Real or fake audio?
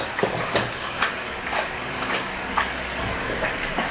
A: fake